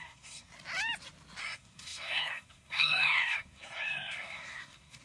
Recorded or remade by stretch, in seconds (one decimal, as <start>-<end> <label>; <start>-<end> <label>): 0.0-0.5 remade; 0.5-1.4 recorded; 1.4-5.0 remade